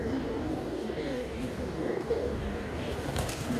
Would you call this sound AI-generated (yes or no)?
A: yes